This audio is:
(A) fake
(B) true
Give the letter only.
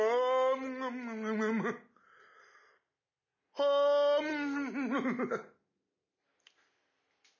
B